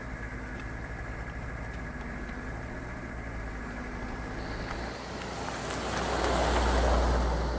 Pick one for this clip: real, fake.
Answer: real